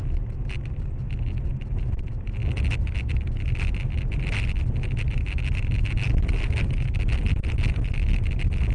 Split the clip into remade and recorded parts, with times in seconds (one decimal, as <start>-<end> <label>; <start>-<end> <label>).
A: 0.0-8.7 recorded